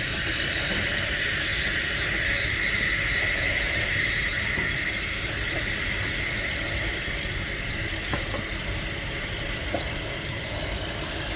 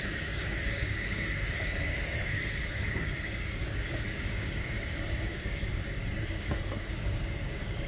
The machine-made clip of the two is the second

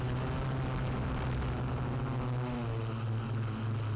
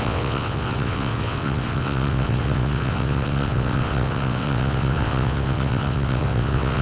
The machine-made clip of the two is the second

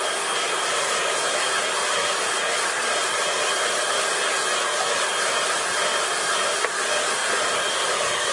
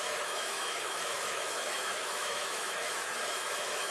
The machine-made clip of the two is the second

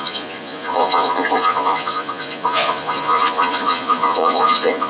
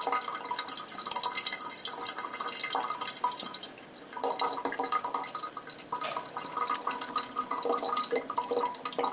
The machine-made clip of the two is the first